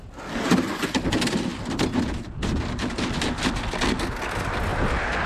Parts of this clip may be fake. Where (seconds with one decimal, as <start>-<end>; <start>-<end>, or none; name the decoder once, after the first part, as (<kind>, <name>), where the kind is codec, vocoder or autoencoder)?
4.7-5.3 (vocoder, BigVGAN v2)